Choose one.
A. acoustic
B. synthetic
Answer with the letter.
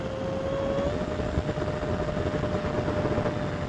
A